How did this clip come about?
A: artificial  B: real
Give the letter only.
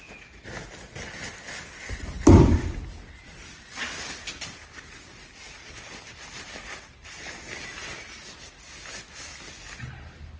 B